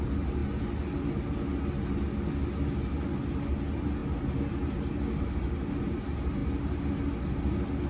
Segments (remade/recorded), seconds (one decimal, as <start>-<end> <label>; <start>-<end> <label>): 0.0-7.9 recorded